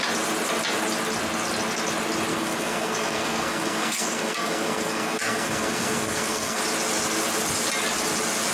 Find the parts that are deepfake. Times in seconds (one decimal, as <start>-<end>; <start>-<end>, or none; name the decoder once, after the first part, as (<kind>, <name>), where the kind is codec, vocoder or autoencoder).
2.3-6.6 (codec, SNAC)